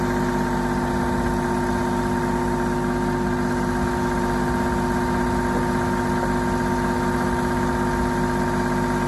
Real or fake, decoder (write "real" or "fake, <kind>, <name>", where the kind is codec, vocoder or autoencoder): real